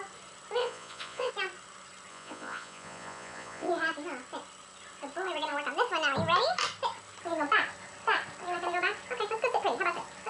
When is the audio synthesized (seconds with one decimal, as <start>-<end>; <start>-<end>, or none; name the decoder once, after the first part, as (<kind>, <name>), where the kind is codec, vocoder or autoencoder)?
0.6-1.3 (vocoder, Vocos); 2.1-3.7